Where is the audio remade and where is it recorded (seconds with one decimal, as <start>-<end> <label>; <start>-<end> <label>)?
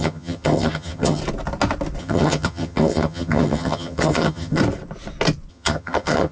0.0-1.2 remade; 1.2-2.0 recorded; 2.0-4.6 remade; 4.6-5.5 recorded; 5.5-6.3 remade